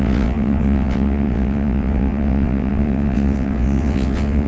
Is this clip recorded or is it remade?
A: remade